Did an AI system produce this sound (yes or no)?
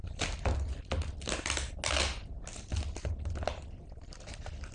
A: no